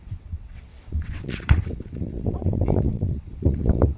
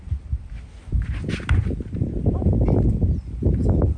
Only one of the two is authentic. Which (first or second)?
second